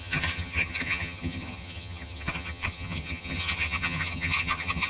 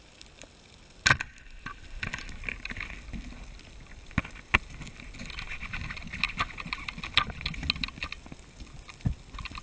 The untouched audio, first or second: second